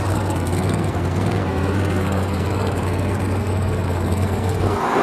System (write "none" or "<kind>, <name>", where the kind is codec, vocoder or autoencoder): codec, SNAC